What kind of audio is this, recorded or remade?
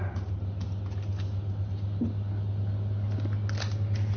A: recorded